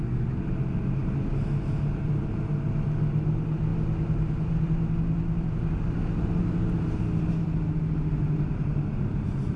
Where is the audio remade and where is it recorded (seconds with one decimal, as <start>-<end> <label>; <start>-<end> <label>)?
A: 0.0-9.6 recorded